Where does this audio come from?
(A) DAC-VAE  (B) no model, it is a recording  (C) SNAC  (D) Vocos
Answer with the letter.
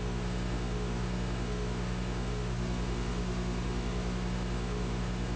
A